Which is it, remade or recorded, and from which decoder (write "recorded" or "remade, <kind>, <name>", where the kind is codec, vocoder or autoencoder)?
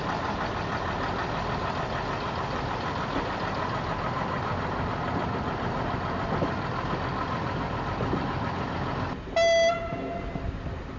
recorded